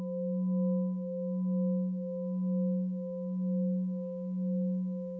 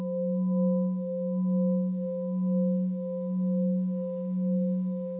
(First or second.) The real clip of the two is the first